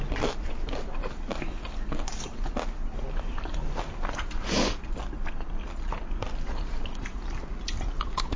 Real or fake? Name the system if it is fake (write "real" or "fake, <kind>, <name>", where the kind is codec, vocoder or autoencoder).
real